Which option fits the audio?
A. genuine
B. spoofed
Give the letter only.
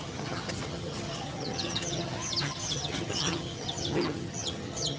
B